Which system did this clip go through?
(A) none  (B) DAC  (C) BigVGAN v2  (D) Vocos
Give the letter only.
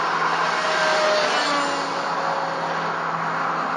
A